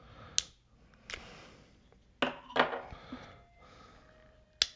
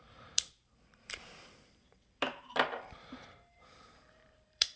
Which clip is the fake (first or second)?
second